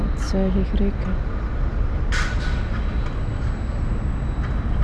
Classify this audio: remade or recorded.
recorded